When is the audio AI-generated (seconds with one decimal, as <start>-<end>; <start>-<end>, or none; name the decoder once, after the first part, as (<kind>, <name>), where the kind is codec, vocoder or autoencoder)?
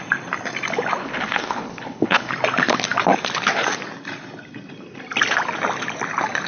1.0-2.3 (codec, HILCodec)